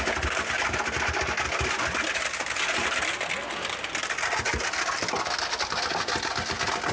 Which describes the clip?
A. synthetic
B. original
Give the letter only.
B